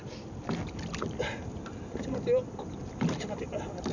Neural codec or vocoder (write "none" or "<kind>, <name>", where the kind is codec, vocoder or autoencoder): none